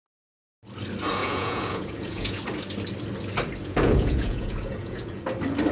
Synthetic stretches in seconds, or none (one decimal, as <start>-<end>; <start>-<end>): 1.2-2.4; 3.6-5.2